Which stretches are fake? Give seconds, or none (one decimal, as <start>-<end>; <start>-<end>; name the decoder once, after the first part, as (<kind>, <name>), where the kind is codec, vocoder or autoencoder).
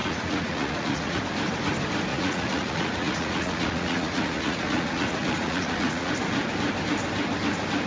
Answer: 0.0-1.2 (vocoder, Vocos); 2.1-6.1